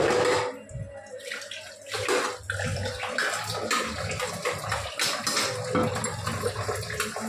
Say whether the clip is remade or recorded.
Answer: recorded